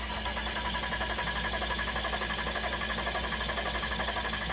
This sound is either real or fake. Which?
real